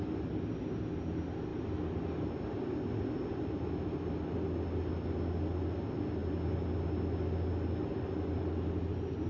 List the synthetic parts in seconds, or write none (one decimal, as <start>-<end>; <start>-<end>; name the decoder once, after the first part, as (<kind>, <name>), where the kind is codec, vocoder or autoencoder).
none